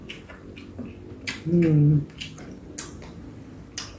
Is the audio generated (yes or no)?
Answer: no